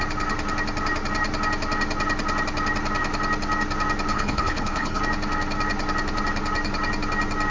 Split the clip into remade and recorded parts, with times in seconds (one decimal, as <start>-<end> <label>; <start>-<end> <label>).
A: 0.0-4.1 recorded; 4.1-5.0 remade; 5.0-7.5 recorded